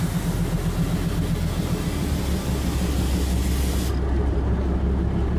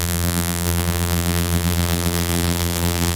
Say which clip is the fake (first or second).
second